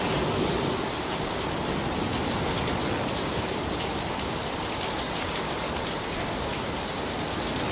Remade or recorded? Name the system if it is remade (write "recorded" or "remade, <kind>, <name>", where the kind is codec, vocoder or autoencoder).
recorded